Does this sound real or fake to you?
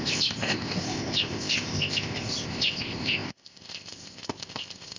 fake